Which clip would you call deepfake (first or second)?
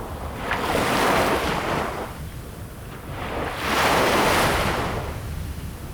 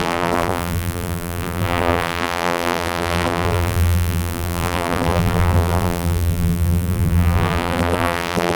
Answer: second